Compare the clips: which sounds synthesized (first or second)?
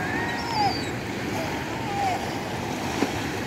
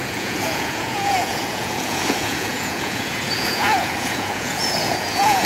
second